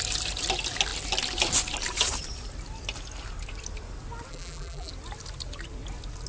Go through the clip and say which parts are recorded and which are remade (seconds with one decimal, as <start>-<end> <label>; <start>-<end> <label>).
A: 0.0-4.3 recorded; 4.3-4.9 remade; 4.9-6.3 recorded

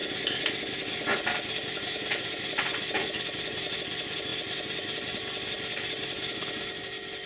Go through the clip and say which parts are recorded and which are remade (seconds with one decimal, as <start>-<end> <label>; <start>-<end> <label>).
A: 0.0-7.3 recorded

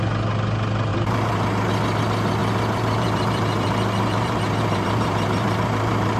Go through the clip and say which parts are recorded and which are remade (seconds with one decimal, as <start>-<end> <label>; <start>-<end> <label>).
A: 0.0-0.9 recorded; 0.9-1.7 remade; 1.7-2.4 recorded; 2.4-6.2 remade

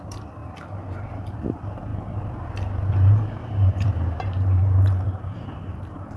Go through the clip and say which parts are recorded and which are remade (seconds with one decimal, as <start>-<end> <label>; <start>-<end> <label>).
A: 0.0-1.9 remade; 1.9-2.9 recorded; 2.9-6.2 remade

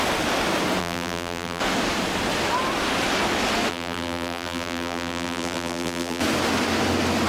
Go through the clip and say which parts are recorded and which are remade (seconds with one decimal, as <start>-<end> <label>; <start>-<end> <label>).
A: 0.0-0.8 recorded; 0.8-1.6 remade; 1.6-3.7 recorded; 3.7-6.2 remade; 6.2-7.3 recorded

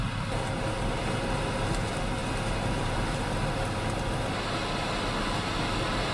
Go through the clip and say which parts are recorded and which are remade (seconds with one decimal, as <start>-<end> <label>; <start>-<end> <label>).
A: 0.0-6.1 recorded

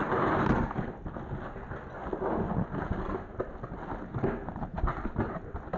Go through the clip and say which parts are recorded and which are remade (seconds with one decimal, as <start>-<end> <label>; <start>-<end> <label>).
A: 0.0-5.8 recorded

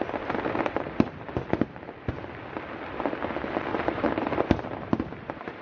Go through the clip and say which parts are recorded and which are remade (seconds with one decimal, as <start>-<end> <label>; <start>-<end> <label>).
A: 0.0-1.3 remade; 1.3-3.7 recorded; 3.7-5.6 remade